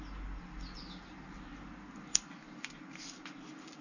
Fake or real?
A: real